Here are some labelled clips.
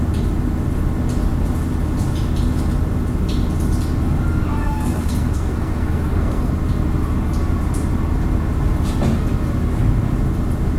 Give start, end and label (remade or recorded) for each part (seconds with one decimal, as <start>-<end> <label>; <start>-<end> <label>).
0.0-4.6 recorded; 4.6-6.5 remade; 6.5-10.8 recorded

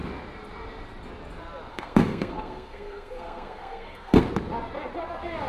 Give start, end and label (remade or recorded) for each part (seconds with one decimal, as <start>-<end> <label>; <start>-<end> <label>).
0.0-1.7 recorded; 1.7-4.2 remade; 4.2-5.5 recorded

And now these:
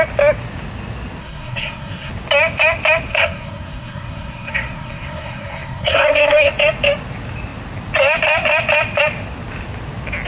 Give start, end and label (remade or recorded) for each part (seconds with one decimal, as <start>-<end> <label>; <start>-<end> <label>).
0.0-1.2 recorded; 1.2-2.1 remade; 2.1-3.1 recorded; 3.1-6.5 remade; 6.5-10.3 recorded

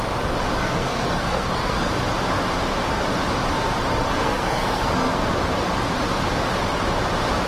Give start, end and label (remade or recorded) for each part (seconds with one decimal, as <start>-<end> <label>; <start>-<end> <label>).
0.0-0.6 recorded; 0.6-1.9 remade; 1.9-4.1 recorded; 4.1-5.3 remade; 5.3-7.5 recorded

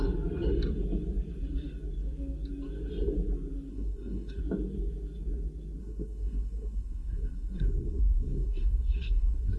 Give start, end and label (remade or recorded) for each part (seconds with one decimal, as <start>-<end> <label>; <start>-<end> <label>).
0.0-3.7 recorded; 3.7-4.4 remade; 4.4-5.8 recorded; 5.8-9.6 remade